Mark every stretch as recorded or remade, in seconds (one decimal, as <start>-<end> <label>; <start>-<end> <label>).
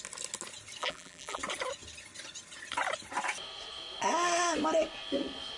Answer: 0.0-0.8 recorded; 0.8-1.4 remade; 1.4-5.6 recorded